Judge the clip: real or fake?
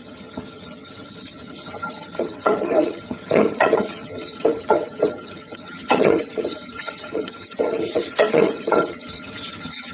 fake